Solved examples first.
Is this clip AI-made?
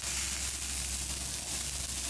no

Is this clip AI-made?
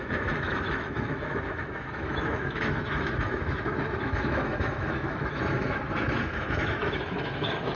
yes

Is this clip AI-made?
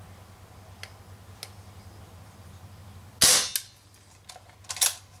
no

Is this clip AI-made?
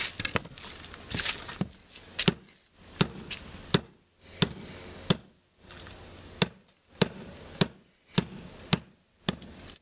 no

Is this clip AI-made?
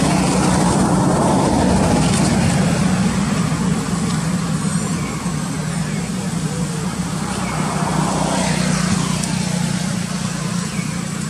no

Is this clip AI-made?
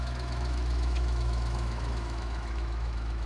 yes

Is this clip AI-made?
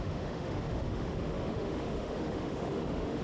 yes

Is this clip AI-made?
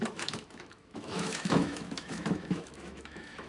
yes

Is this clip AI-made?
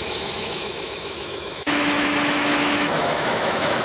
yes